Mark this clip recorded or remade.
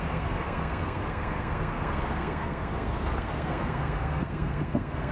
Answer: remade